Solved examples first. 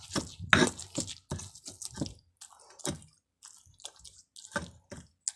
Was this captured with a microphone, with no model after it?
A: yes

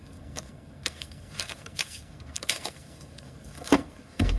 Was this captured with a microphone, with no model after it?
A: no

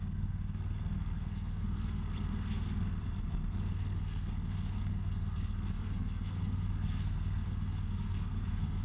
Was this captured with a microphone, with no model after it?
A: no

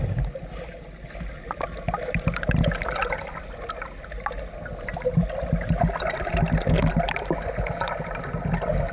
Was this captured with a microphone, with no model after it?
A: yes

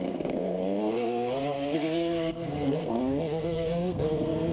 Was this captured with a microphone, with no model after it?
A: no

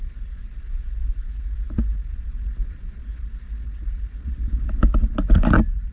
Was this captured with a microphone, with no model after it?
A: yes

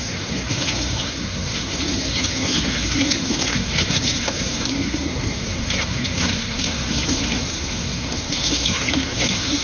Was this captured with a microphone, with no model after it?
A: no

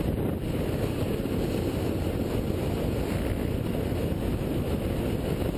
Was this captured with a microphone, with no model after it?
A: yes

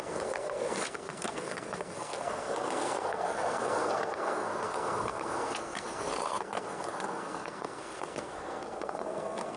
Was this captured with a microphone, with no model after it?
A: no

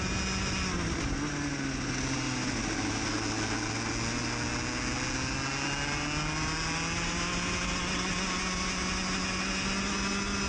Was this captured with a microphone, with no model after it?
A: yes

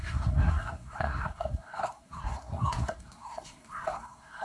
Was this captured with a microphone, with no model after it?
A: no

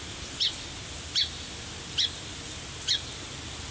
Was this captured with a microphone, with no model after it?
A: yes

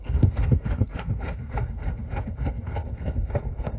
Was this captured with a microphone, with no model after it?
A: no